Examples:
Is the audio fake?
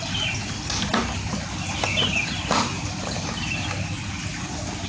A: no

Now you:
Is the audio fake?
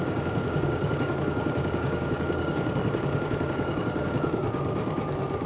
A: yes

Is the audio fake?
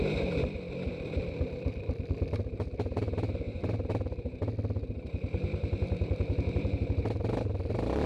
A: no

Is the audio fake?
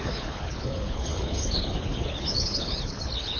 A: yes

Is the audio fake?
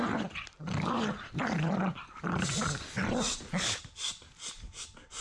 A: no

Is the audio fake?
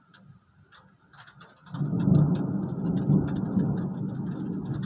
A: no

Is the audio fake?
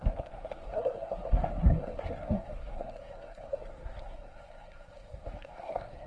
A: yes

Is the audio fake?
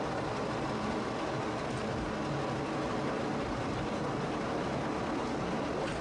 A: no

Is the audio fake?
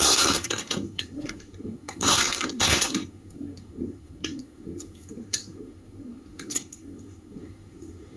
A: yes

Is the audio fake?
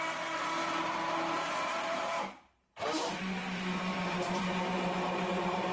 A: yes